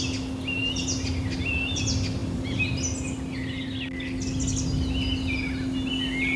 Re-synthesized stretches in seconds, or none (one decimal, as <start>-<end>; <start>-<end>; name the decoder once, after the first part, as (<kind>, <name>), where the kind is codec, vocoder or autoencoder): none